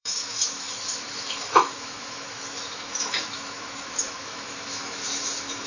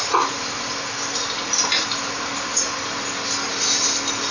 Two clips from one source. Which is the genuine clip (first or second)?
second